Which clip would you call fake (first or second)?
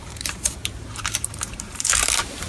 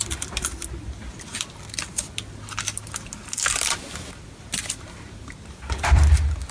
first